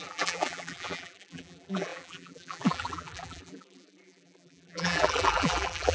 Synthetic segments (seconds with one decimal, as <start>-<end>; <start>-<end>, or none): 0.0-5.9